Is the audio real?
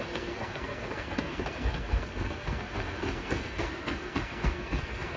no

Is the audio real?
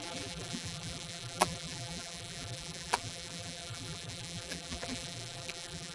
no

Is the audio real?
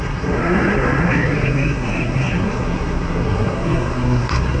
no